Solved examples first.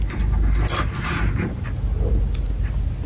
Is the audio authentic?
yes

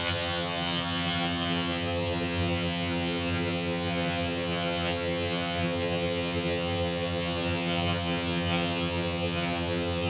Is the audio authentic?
no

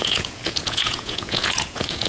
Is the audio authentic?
no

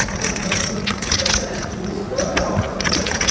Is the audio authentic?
no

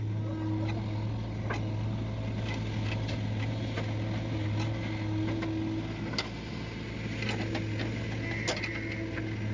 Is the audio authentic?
yes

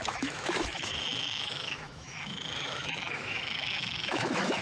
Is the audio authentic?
no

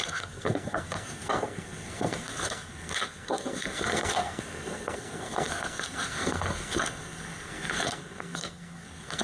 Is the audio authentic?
no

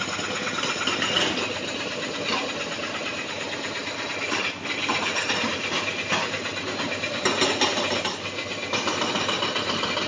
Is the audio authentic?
yes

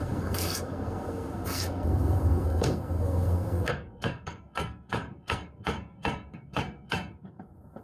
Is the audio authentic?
no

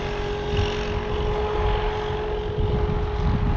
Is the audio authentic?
yes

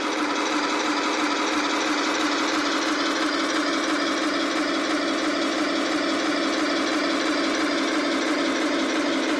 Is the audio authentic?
yes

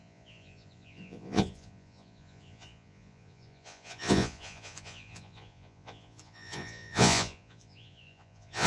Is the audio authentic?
no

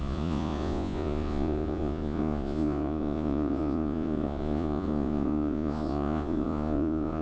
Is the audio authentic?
no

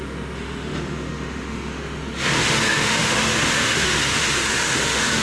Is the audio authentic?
no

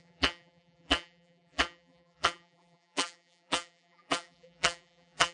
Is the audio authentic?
no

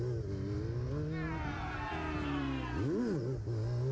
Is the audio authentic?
yes